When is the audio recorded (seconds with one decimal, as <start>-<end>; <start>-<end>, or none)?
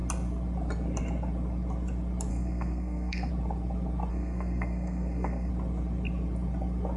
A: 0.0-2.3; 3.3-4.1; 5.5-7.0